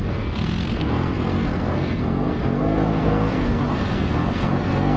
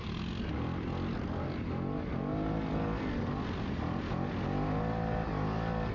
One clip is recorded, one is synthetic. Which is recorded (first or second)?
second